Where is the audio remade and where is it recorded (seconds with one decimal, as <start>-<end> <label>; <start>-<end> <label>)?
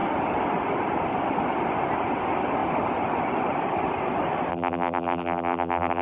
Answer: 0.0-4.5 recorded; 4.5-6.0 remade